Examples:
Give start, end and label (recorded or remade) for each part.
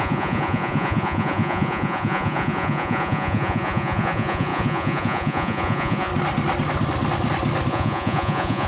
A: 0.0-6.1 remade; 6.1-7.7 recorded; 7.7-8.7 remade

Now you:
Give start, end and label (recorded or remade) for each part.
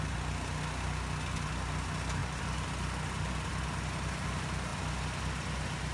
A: 0.0-5.9 recorded